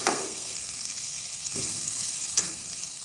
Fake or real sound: fake